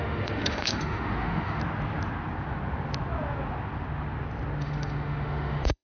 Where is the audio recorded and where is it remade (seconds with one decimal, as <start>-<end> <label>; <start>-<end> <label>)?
0.0-1.6 remade; 1.6-4.6 recorded; 4.6-5.8 remade